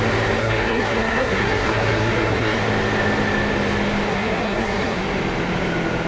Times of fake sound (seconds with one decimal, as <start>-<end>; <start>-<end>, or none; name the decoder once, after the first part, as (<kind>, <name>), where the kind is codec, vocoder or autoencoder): 0.4-2.6 (codec, SNAC); 4.1-5.0